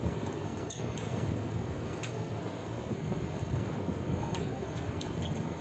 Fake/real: fake